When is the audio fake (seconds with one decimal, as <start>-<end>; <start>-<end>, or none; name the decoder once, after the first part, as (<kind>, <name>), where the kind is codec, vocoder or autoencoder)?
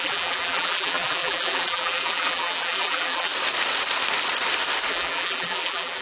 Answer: 0.0-3.3 (vocoder, BigVGAN v2); 4.9-6.0